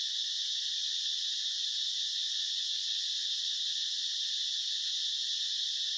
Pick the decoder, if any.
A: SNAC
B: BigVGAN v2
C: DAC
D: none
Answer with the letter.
D